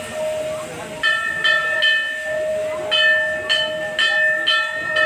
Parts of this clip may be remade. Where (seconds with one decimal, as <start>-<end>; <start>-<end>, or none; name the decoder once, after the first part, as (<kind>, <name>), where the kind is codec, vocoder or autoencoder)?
none